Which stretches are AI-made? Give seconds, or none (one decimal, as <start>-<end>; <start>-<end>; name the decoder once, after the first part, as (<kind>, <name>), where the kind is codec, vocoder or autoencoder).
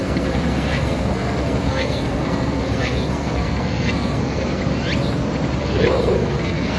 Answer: 0.0-4.6 (codec, SNAC); 5.6-6.8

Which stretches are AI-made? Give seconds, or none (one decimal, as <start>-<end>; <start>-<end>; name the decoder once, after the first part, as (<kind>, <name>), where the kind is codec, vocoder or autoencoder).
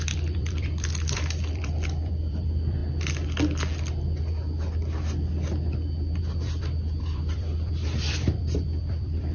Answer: 0.0-2.8 (vocoder, BigVGAN v2); 6.2-9.3